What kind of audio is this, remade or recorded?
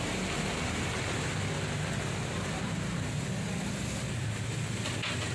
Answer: recorded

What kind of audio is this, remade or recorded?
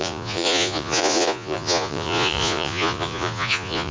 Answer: remade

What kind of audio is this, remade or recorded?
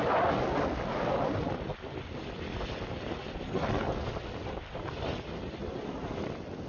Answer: recorded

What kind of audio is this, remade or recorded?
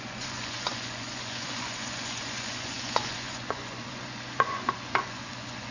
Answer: remade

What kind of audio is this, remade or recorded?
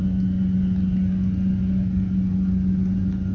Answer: recorded